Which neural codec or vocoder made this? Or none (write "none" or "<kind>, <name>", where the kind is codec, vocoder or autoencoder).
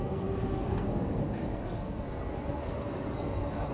codec, SNAC